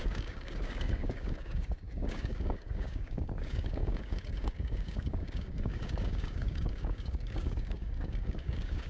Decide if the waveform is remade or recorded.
remade